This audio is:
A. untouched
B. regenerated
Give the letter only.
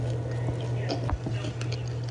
A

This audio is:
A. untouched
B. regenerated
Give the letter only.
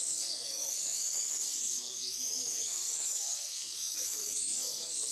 B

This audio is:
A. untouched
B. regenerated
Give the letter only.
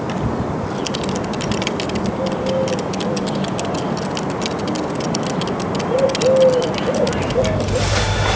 A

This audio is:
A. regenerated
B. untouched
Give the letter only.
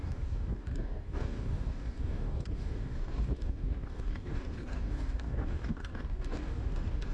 A